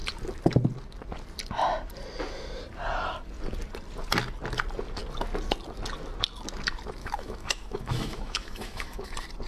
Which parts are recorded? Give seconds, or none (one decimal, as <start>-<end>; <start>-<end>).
0.0-7.0; 9.1-9.5